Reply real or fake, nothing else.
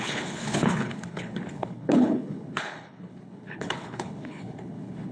fake